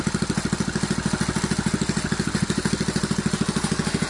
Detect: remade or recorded recorded